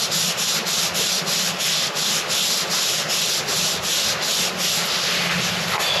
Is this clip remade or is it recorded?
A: recorded